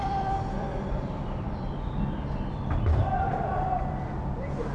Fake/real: fake